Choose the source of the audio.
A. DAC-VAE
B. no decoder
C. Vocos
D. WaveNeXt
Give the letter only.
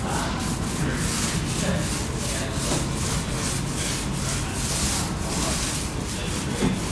B